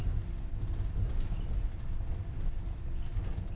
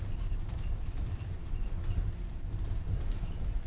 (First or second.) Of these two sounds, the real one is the first